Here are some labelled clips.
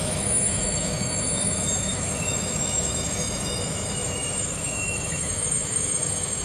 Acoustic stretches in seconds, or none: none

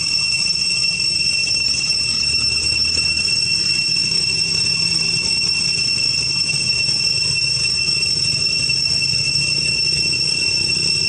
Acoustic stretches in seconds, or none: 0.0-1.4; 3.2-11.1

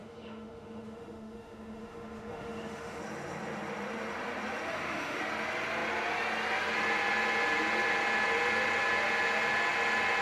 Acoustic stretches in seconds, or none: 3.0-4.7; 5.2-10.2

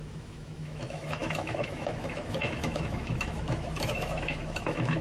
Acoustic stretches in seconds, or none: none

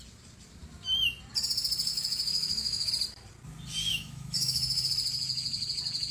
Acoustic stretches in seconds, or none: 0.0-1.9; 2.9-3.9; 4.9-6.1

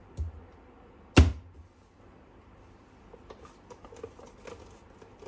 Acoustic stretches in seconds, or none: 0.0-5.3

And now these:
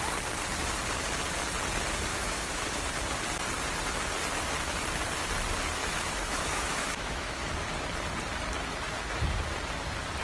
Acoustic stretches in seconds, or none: 0.0-2.1; 2.8-5.8; 7.5-10.2